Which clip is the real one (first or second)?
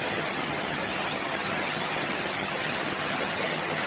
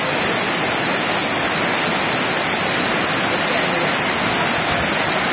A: second